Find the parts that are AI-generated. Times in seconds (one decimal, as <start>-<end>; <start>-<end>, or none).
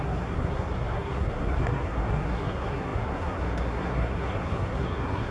0.0-5.3